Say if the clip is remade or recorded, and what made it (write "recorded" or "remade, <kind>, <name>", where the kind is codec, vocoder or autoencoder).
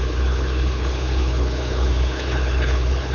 remade, codec, HILCodec